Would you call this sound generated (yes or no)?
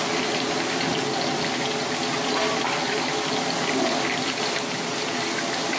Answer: no